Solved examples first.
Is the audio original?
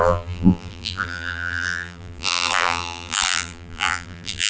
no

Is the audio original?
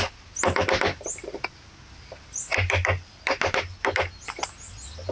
yes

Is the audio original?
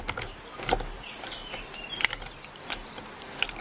yes